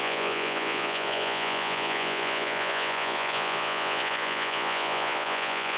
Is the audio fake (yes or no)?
yes